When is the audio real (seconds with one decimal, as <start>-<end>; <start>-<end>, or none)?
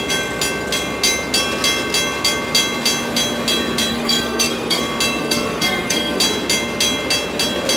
0.0-3.9; 4.8-5.2; 6.2-7.8